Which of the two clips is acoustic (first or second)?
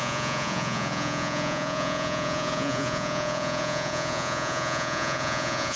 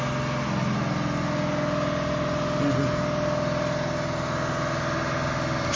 second